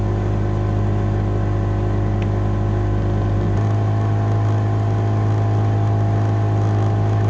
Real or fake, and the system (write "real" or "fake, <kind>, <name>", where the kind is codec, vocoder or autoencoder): real